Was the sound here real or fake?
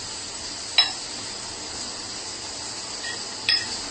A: real